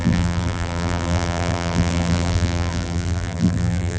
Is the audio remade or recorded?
remade